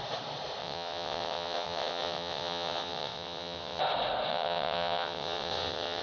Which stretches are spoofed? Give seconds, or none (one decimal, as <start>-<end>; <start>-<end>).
0.6-3.8; 4.3-6.0